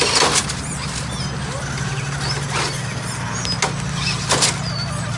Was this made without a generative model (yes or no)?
yes